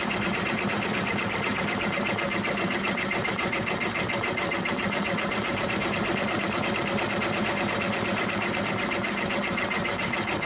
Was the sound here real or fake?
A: fake